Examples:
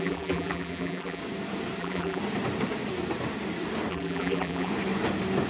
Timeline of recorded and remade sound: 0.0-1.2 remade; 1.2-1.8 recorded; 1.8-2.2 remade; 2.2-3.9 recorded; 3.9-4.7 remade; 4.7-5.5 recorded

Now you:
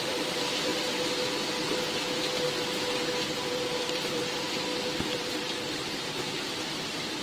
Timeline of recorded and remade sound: 0.0-0.7 remade; 0.7-3.9 recorded; 3.9-4.7 remade; 4.7-5.7 recorded; 5.7-7.2 remade

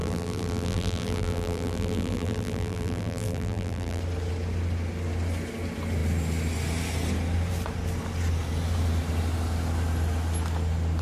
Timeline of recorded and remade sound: 0.0-4.0 remade; 4.0-11.0 recorded

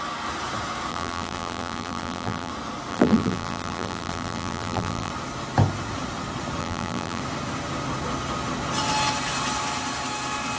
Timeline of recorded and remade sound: 0.0-0.9 recorded; 0.9-2.5 remade; 2.5-2.9 recorded; 2.9-5.1 remade; 5.1-6.6 recorded; 6.6-7.2 remade; 7.2-10.6 recorded

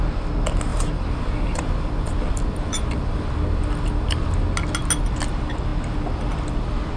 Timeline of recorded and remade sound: 0.0-0.7 recorded; 0.7-4.4 remade; 4.4-7.0 recorded

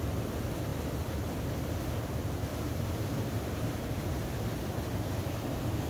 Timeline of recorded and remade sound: 0.0-2.5 recorded; 2.5-4.3 remade; 4.3-5.9 recorded